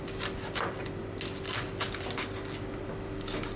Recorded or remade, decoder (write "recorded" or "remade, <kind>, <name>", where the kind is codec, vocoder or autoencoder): recorded